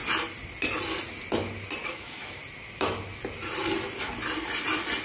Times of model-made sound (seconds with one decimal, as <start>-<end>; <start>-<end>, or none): 1.8-2.4